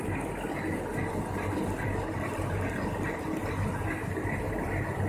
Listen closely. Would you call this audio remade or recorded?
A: recorded